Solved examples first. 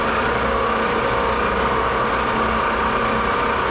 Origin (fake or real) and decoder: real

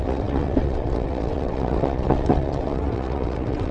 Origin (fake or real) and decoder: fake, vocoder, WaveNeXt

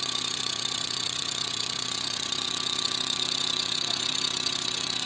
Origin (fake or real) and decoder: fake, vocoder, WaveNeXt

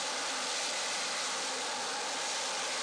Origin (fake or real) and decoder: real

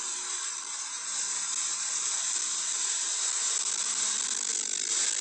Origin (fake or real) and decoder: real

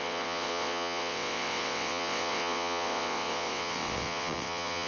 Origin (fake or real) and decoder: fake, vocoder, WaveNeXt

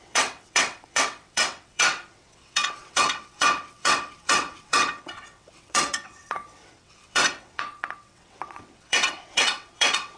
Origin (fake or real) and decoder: fake, vocoder, WaveNeXt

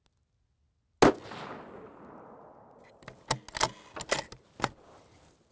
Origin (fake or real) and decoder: real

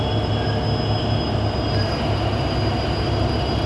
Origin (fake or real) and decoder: real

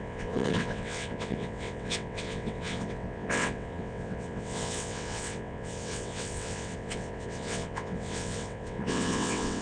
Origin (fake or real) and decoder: fake, vocoder, WaveNeXt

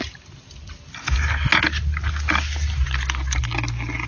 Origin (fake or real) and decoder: real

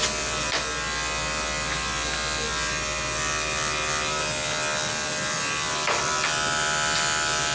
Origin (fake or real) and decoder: real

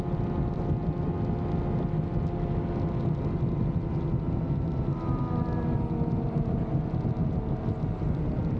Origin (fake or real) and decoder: real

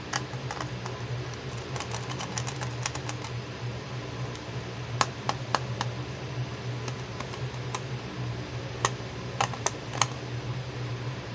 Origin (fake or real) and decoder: real